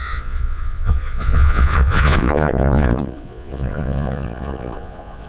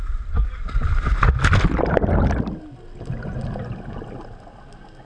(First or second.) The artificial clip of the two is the first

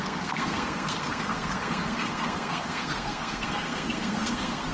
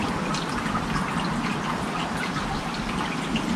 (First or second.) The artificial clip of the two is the first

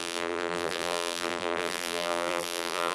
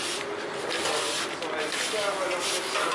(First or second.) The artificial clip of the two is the first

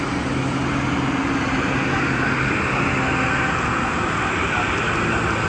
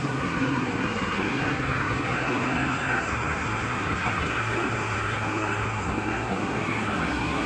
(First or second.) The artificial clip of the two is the second